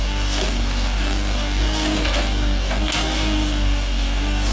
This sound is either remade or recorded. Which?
remade